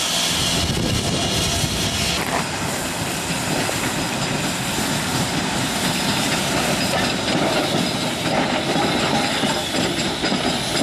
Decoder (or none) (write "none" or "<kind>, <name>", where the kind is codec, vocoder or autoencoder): none